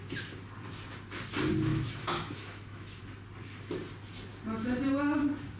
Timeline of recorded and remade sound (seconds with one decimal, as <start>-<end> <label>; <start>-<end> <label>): 0.0-1.7 recorded; 1.7-3.0 remade; 3.0-5.6 recorded